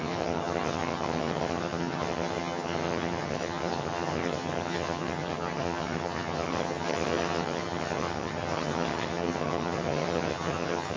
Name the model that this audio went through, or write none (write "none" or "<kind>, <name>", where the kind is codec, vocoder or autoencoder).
vocoder, HiFi-GAN